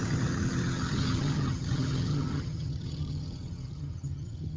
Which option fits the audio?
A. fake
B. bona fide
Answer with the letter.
A